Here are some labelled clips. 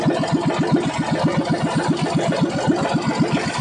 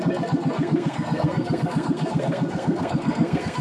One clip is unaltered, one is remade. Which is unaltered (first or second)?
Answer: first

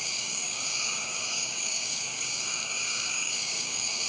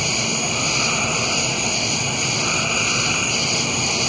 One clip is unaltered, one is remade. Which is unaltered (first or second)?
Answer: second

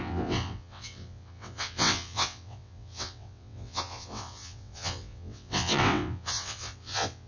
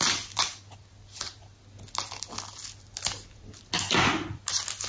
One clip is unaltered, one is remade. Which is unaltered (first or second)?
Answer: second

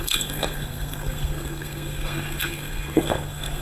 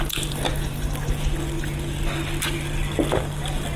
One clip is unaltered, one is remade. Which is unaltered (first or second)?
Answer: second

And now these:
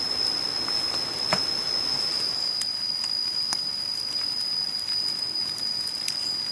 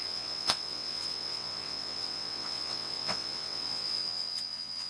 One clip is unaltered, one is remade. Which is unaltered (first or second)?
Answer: first